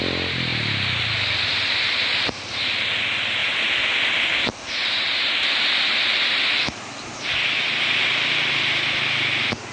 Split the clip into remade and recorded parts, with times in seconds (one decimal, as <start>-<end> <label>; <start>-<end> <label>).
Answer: 0.0-9.7 recorded